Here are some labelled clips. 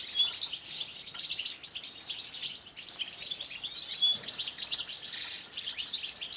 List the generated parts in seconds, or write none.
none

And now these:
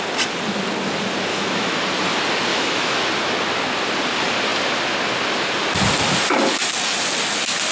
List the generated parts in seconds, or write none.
1.3-1.8 (autoencoder, DAC-VAE); 2.5-3.0

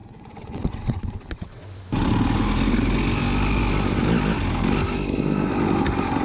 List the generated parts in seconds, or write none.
0.0-1.6 (vocoder, WaveNeXt)

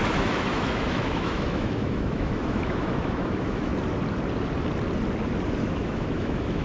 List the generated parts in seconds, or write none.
0.0-3.7 (autoencoder, DAC-VAE); 5.6-6.6

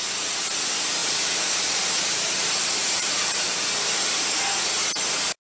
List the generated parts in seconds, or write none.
1.0-4.2 (vocoder, BigVGAN v2)

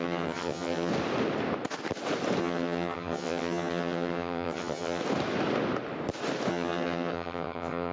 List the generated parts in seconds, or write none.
0.0-0.9 (vocoder, HiFi-GAN); 2.4-5.0; 6.5-7.9

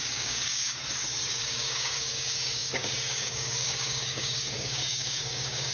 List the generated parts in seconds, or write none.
0.0-0.8 (codec, DAC); 1.3-5.7

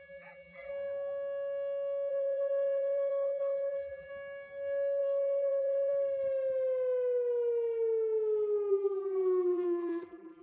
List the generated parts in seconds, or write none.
0.0-0.7 (vocoder, BigVGAN v2); 2.1-4.1; 5.0-5.9; 8.7-10.4